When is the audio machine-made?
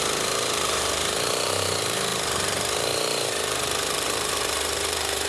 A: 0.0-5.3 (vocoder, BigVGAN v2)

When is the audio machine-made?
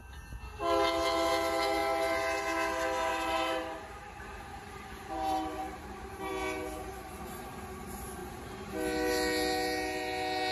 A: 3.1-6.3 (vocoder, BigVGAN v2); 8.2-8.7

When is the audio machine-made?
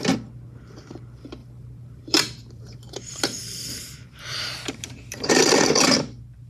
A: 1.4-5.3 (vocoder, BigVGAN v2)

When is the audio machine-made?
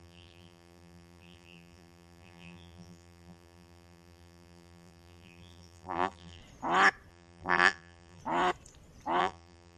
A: 0.0-6.4 (vocoder, BigVGAN v2); 7.1-8.2; 9.2-9.8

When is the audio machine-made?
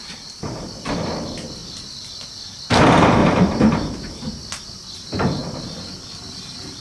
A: 0.0-0.7 (vocoder, BigVGAN v2); 3.2-4.4